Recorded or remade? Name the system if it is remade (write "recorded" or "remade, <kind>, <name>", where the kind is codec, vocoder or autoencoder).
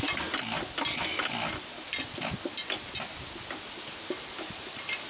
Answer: recorded